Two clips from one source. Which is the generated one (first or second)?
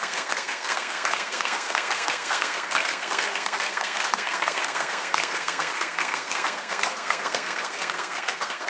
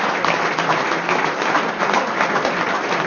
first